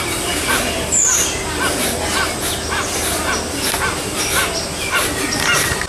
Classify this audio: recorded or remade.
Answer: recorded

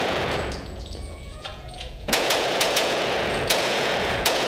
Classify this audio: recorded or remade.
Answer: remade